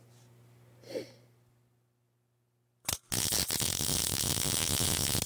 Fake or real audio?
real